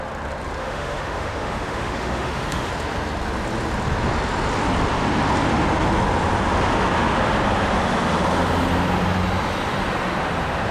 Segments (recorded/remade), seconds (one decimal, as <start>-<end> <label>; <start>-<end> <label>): 0.0-0.6 recorded; 0.6-2.7 remade; 2.7-10.7 recorded